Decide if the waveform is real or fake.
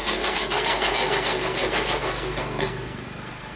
fake